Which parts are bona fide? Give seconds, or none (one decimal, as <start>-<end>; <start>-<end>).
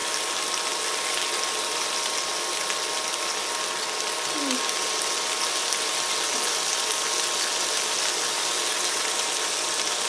0.0-10.1